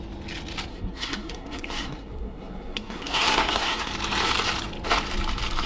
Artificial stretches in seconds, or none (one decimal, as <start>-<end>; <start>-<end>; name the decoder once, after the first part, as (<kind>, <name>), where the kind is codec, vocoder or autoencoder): 0.7-3.9 (codec, SNAC)